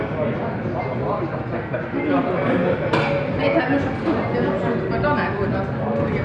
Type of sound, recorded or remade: recorded